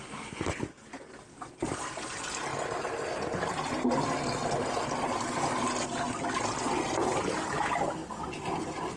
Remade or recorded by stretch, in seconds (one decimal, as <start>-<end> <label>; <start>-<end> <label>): 0.0-9.0 recorded